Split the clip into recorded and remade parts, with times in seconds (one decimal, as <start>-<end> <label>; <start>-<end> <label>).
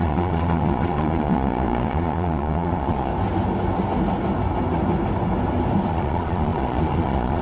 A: 0.0-3.1 remade; 3.1-5.9 recorded; 5.9-7.4 remade